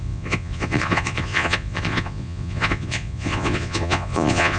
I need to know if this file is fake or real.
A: fake